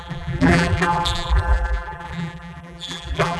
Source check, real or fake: fake